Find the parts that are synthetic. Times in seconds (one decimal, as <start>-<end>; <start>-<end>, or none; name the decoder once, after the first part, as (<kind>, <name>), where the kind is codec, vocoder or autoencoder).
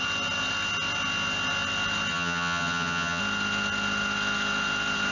2.1-3.2 (vocoder, HiFi-GAN)